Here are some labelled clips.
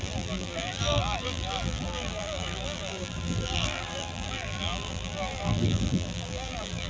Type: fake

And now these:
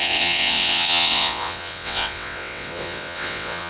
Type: fake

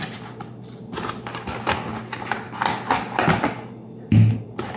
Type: real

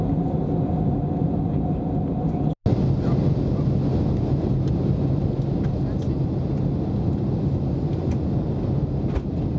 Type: real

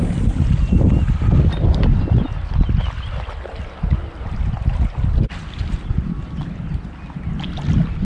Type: real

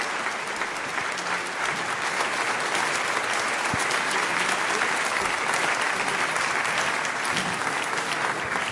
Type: real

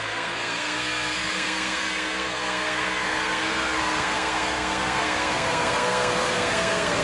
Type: fake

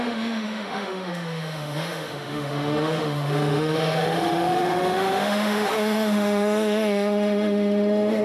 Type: fake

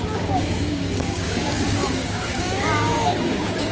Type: fake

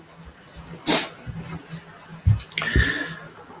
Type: real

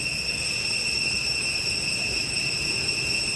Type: real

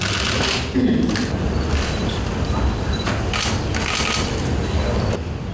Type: real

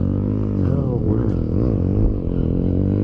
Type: real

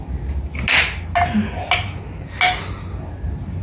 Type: real